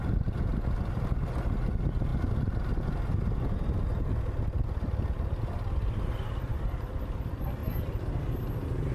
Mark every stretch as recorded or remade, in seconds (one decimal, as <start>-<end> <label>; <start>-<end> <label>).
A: 0.0-8.9 recorded